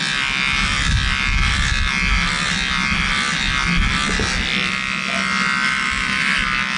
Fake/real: real